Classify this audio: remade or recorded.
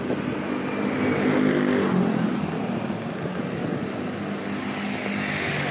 recorded